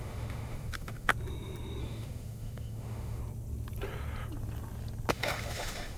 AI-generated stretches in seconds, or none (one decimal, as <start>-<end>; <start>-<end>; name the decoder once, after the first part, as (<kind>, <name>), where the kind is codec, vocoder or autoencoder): 0.0-1.1 (autoencoder, DAC-VAE); 1.8-3.2; 5.1-6.0